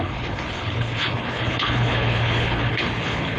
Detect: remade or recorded remade